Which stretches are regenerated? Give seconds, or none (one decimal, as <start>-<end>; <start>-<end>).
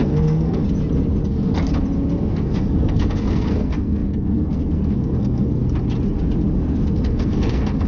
0.0-0.6; 1.2-1.7; 2.3-5.6; 6.6-7.9